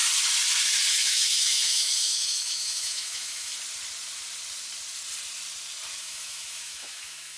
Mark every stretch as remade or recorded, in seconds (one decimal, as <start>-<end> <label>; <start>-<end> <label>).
0.0-0.9 recorded; 0.9-3.5 remade; 3.5-6.0 recorded; 6.0-7.4 remade